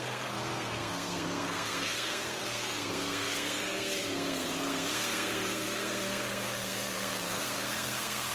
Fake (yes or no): yes